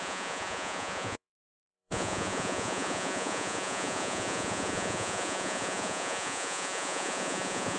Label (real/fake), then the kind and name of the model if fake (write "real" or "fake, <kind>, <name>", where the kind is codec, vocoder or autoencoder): fake, vocoder, Vocos